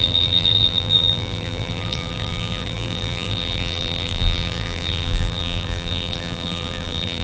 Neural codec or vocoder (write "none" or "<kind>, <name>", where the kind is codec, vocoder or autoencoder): vocoder, BigVGAN v2